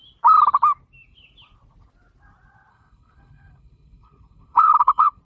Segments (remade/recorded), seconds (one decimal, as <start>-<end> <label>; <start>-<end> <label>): 0.0-2.7 recorded; 2.7-5.2 remade